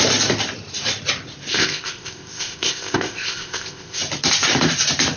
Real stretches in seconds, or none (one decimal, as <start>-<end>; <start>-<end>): 0.0-1.5; 4.0-5.2